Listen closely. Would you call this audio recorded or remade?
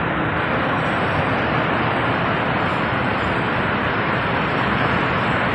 recorded